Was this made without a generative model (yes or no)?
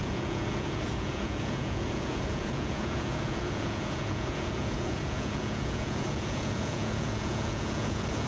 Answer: no